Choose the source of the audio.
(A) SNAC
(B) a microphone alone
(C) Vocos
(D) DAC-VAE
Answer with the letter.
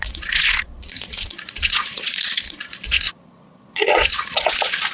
C